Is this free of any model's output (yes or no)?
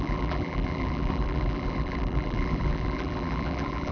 no